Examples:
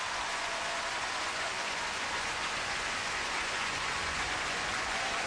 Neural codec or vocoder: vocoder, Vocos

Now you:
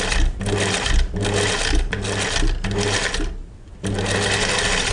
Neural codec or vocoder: none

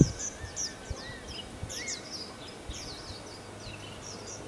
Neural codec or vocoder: none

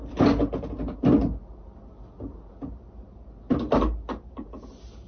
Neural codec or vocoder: none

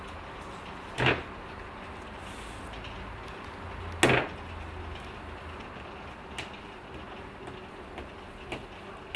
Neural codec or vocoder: none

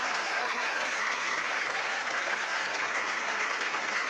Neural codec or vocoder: codec, SNAC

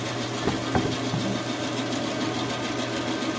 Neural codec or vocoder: none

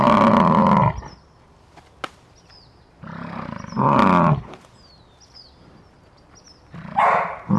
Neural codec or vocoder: none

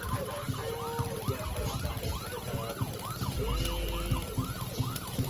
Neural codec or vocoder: none